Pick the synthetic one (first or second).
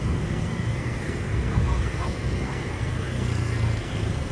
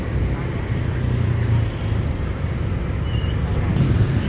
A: first